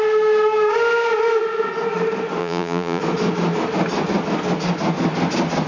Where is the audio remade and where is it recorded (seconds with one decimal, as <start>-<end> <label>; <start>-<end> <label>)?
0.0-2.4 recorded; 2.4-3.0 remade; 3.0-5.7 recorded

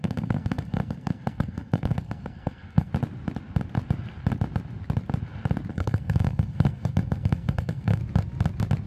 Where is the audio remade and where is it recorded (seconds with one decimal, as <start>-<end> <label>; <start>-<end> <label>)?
0.0-2.9 remade; 2.9-5.7 recorded; 5.7-8.0 remade; 8.0-8.9 recorded

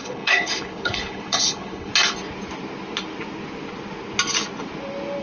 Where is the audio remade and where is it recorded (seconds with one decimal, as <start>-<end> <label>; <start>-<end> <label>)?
0.0-1.9 remade; 1.9-5.2 recorded